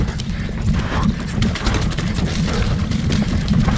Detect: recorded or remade remade